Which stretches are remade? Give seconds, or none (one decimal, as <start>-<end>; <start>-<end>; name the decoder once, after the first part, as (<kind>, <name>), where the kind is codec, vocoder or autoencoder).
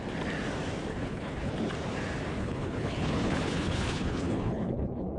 0.9-1.5 (codec, HILCodec); 2.4-5.2